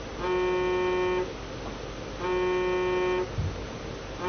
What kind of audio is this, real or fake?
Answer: real